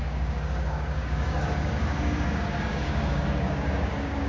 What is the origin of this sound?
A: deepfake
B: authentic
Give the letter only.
A